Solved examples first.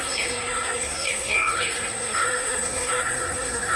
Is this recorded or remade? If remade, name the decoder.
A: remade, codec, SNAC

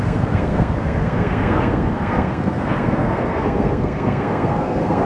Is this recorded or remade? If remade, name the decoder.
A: remade, codec, SNAC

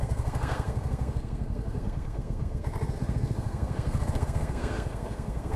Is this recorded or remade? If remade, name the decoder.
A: remade, codec, SNAC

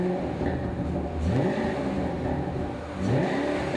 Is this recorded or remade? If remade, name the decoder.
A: recorded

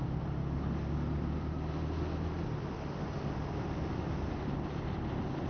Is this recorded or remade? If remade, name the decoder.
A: recorded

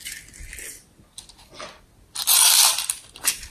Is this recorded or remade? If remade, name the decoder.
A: recorded